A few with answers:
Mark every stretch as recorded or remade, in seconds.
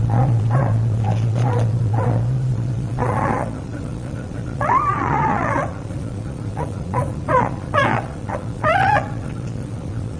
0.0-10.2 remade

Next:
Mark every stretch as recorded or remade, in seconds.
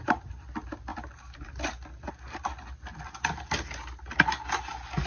0.0-5.1 recorded